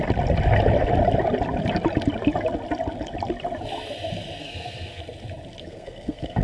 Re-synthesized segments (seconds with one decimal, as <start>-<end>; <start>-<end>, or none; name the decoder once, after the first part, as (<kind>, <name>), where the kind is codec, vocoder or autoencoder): 4.4-5.0 (codec, SNAC); 5.6-6.4